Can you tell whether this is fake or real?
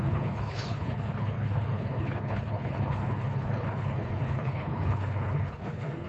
fake